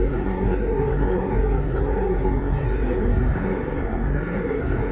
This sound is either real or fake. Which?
fake